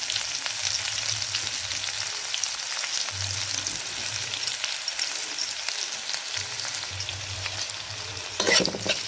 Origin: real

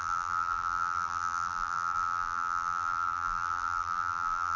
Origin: fake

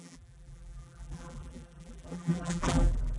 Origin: fake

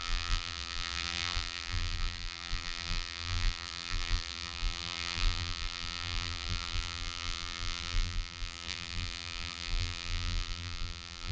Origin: fake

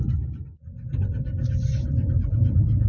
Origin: fake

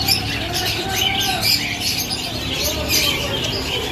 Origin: fake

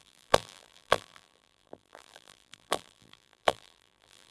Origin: fake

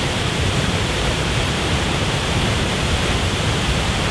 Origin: fake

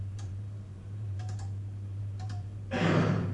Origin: fake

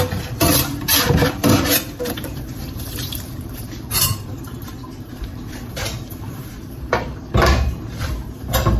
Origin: fake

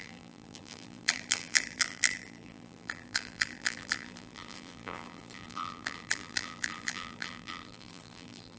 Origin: fake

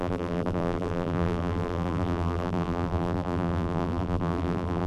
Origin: fake